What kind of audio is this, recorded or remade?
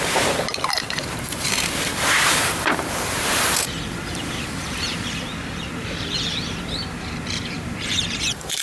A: remade